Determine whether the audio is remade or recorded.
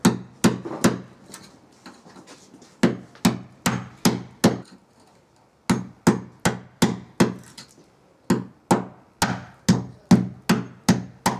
recorded